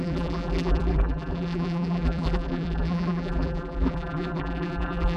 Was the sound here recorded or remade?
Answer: remade